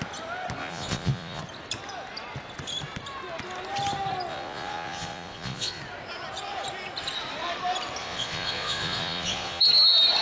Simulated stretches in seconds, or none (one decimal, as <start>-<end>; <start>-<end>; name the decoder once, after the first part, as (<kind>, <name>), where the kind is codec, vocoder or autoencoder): 0.6-1.4 (vocoder, Vocos); 4.3-5.8; 8.0-9.6